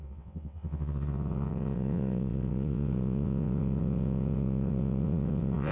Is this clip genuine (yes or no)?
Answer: no